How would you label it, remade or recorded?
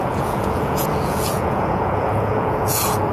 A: remade